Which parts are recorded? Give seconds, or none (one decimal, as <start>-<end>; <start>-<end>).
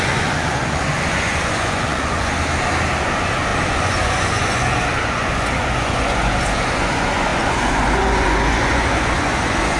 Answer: 2.3-3.0